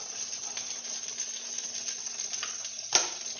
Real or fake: real